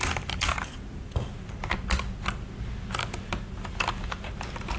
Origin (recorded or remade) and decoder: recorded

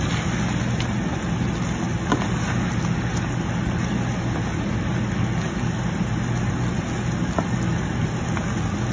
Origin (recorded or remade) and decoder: recorded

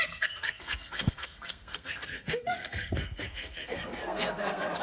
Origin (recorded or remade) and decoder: remade, codec, SNAC